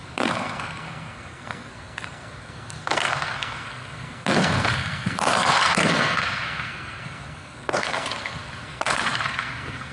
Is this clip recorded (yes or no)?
no